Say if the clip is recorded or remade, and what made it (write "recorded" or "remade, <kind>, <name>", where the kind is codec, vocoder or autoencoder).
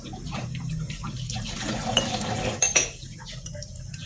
recorded